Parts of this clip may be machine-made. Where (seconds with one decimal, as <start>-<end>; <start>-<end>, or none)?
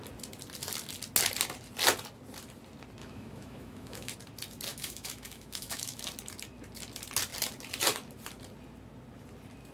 3.0-4.1; 4.7-6.0